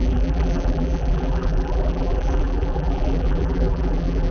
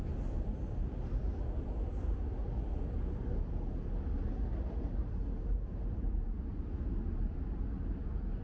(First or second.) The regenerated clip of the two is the first